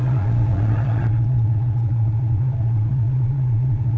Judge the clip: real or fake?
fake